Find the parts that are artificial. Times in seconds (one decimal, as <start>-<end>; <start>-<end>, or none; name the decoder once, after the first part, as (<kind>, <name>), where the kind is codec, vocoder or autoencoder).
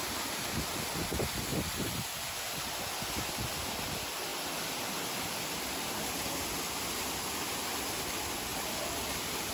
8.5-9.5 (vocoder, BigVGAN v2)